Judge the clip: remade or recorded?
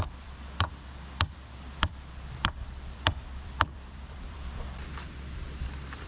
remade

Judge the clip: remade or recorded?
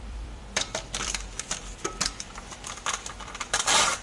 remade